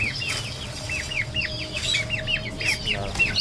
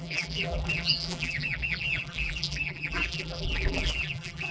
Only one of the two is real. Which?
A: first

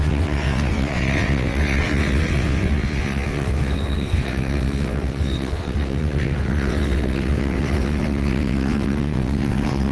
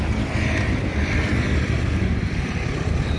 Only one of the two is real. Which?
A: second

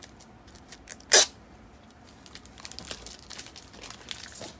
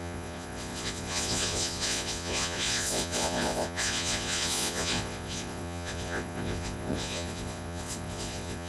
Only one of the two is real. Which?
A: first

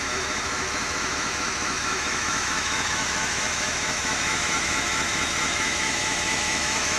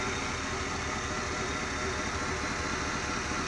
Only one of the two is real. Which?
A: second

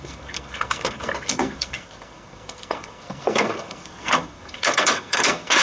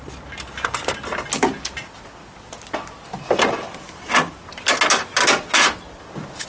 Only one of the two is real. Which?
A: second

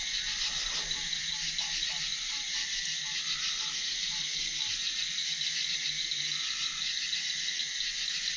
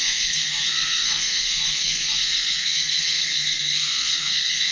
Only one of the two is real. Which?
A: first